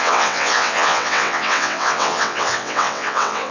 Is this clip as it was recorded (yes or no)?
no